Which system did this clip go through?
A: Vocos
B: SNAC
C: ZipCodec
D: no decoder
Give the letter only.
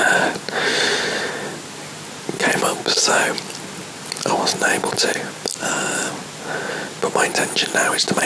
D